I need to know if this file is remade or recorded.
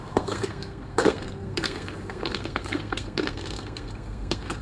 remade